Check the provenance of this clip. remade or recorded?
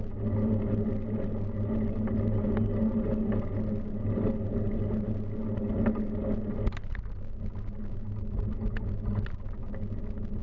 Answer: recorded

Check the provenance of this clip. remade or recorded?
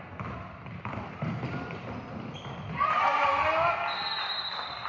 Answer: recorded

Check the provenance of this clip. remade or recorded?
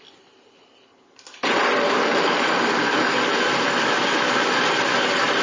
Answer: recorded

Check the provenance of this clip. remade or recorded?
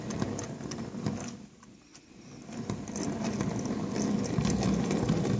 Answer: recorded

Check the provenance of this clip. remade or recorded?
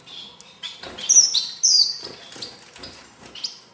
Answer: recorded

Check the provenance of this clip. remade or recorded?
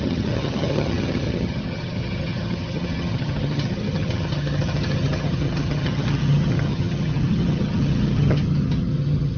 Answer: remade